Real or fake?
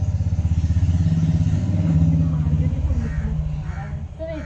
real